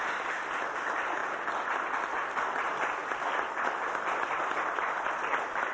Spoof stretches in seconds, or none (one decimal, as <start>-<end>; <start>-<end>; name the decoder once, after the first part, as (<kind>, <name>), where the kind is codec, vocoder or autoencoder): none